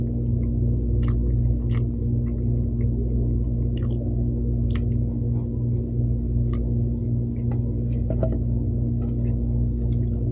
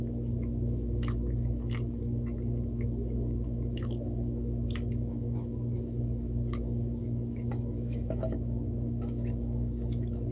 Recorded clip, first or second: first